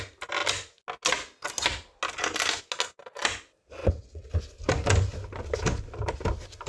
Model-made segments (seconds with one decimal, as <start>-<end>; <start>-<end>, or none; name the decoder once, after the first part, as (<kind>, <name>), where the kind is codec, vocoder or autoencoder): 3.8-4.4 (vocoder, WaveNeXt)